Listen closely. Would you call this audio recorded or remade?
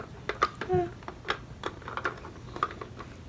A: recorded